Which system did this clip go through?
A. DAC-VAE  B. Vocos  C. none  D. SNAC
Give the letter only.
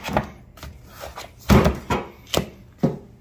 C